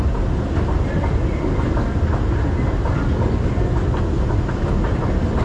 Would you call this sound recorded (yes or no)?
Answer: yes